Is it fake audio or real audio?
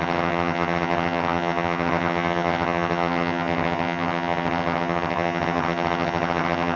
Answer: fake